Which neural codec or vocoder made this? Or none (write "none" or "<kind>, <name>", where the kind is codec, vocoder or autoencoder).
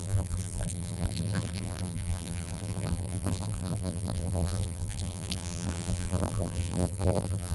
vocoder, BigVGAN v2